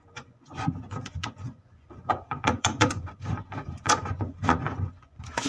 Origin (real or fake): fake